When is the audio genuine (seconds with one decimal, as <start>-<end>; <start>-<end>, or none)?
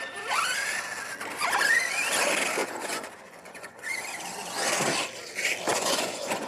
0.0-2.6; 4.0-5.7